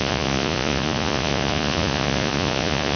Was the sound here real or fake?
fake